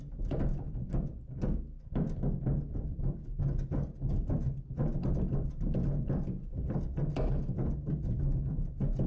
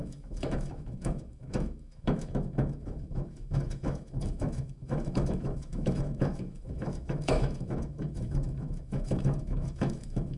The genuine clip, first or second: first